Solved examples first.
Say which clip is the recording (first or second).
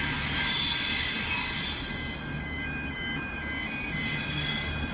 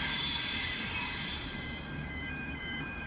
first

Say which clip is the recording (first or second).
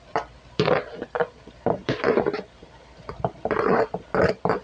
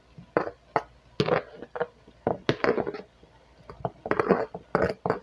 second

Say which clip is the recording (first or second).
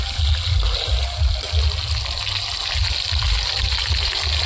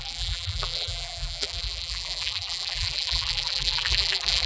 first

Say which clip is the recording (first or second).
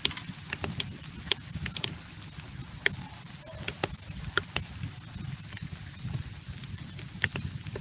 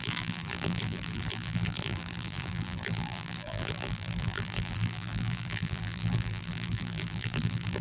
first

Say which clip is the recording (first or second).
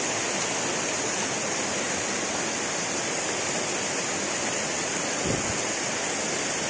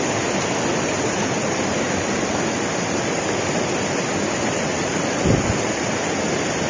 first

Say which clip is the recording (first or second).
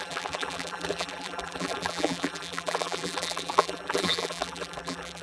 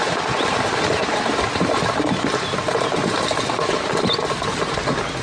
second